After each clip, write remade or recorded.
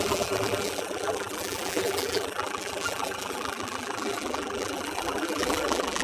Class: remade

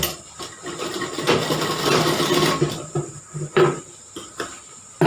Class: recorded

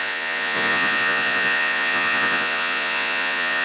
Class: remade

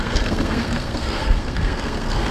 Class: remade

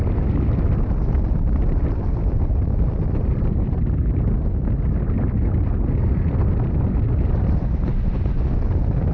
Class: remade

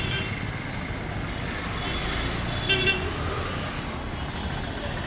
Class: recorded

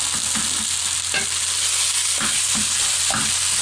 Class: recorded